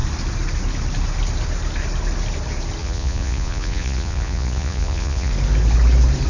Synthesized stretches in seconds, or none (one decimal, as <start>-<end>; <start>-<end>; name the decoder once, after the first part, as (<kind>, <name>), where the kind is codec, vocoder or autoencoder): 2.8-5.3 (vocoder, Vocos)